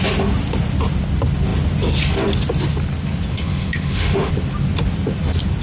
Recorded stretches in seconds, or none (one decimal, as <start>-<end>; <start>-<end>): 0.0-3.3; 4.3-5.6